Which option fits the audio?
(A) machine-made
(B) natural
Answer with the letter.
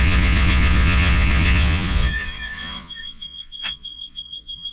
A